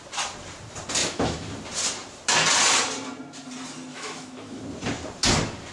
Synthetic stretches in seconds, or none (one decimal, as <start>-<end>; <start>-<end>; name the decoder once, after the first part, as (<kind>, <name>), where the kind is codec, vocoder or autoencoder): 1.0-1.5 (autoencoder, DAC-VAE); 3.9-4.6